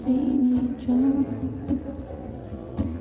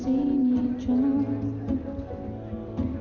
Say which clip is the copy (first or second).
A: first